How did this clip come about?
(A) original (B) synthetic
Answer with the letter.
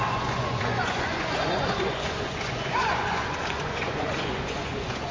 B